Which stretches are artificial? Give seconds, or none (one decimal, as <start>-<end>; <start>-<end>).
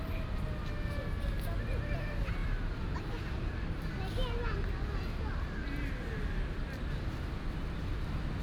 none